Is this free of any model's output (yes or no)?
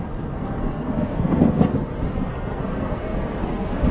no